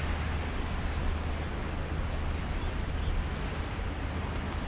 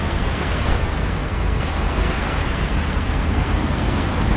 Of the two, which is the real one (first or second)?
first